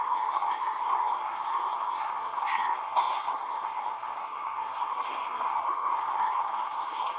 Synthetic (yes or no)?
yes